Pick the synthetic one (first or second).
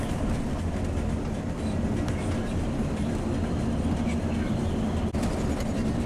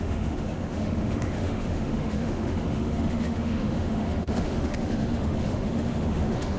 second